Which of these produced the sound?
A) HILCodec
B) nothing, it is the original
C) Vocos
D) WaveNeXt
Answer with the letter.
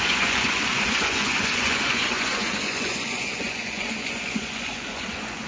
C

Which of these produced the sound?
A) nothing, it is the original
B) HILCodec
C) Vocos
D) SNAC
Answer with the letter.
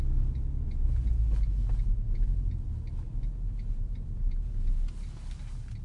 A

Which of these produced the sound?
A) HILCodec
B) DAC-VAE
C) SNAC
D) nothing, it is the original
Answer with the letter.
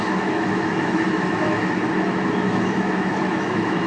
B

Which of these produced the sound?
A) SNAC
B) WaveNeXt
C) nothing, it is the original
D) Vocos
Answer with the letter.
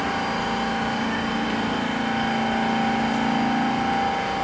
C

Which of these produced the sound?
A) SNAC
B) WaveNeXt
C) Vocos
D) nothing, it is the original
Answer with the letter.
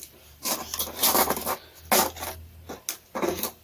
D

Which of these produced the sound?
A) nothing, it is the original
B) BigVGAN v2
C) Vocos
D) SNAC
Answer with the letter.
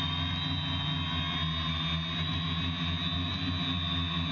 A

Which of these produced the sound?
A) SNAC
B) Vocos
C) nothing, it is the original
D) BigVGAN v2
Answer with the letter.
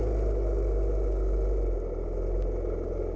C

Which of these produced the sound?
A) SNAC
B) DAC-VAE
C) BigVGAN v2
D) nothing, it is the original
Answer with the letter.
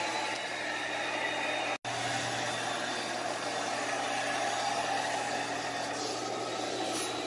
D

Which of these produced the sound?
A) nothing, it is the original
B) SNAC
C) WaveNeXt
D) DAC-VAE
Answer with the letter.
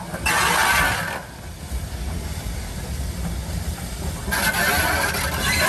A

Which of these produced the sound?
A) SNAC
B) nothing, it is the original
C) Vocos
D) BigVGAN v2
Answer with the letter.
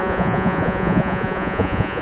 C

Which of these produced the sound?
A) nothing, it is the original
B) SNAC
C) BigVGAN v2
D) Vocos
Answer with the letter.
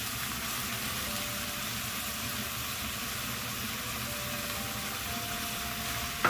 A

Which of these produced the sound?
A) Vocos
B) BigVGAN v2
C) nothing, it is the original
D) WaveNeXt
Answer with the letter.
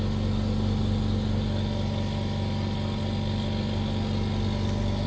C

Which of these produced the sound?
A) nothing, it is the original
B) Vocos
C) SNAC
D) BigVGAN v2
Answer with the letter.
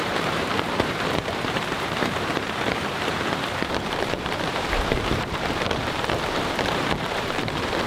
D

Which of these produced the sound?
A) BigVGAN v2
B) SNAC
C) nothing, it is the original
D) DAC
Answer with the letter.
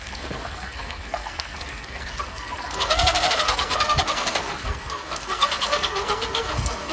B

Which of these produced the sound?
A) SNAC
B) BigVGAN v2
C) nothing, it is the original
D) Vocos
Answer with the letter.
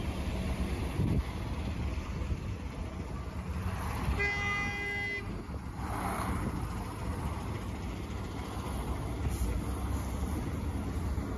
C